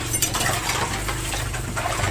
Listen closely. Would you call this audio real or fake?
fake